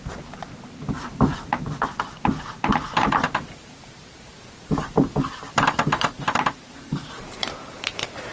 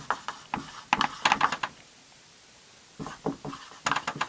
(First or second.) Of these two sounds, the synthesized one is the first